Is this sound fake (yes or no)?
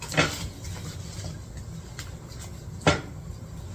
no